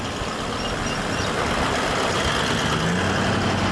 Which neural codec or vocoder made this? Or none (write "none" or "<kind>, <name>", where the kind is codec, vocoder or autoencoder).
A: none